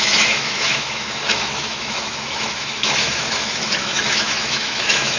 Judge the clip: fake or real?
fake